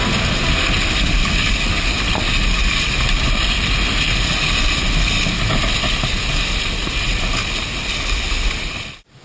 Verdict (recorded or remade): recorded